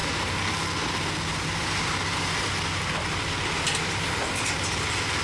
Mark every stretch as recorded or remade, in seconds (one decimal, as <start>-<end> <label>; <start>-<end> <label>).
0.0-3.1 recorded; 3.1-5.2 remade